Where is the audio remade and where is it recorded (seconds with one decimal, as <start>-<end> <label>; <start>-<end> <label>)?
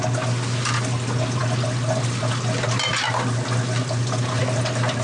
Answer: 0.0-5.0 recorded